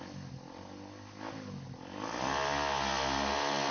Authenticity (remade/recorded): recorded